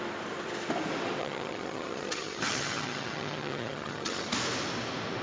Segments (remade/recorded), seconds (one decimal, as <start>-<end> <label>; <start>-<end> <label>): 0.0-1.2 recorded; 1.2-4.3 remade; 4.3-5.2 recorded